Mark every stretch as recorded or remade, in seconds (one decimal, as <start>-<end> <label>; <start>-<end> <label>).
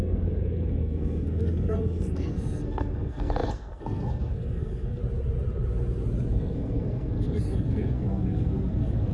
0.0-5.0 remade; 5.0-6.3 recorded; 6.3-9.1 remade